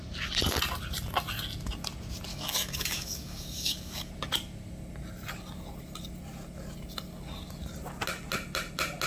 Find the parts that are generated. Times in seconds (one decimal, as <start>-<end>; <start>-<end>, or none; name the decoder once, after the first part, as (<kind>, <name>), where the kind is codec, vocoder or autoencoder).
2.3-4.1 (codec, DAC)